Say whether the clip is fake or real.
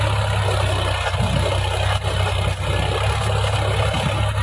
real